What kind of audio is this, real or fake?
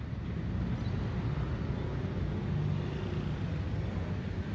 real